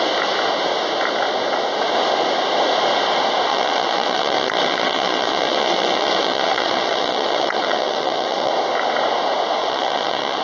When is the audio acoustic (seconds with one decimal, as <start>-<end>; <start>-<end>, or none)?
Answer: 0.0-3.5; 8.5-9.6